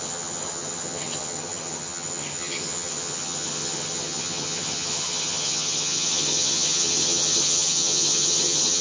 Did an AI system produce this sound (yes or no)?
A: yes